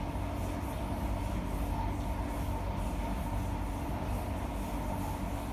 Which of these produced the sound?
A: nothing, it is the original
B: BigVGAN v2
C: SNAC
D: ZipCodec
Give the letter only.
A